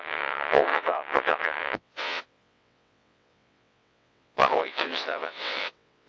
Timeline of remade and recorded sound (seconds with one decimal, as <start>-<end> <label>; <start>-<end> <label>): 0.0-6.1 remade